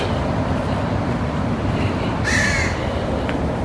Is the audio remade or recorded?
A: recorded